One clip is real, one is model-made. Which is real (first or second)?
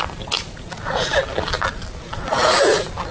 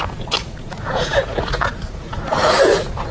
first